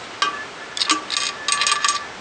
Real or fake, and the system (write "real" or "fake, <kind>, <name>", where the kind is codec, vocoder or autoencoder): real